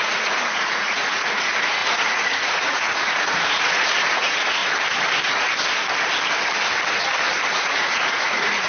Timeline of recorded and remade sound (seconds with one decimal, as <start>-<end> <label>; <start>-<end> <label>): 0.0-4.6 remade; 4.6-7.5 recorded; 7.5-8.7 remade